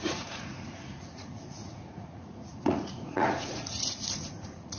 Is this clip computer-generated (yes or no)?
yes